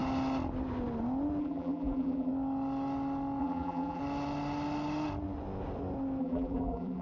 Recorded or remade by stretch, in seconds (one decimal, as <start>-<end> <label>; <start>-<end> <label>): 0.0-1.4 recorded; 1.4-2.3 remade; 2.3-3.4 recorded; 3.4-4.0 remade; 4.0-6.2 recorded; 6.2-7.0 remade